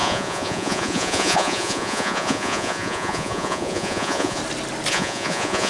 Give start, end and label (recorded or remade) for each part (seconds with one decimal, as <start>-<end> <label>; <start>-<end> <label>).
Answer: 0.0-4.4 remade; 4.4-4.9 recorded; 4.9-5.7 remade